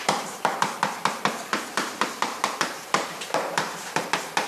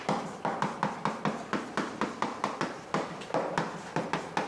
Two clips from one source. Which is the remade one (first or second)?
first